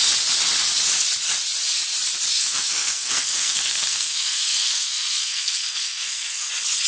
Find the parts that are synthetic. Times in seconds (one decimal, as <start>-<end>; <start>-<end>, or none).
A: 2.4-6.5